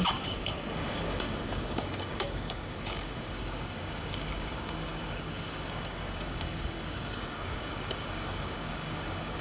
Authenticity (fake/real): fake